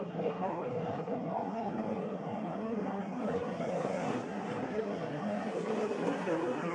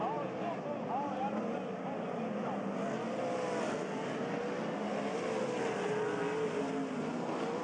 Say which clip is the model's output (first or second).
first